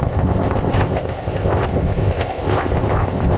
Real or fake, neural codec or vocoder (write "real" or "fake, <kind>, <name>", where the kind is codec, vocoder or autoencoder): fake, codec, ZipCodec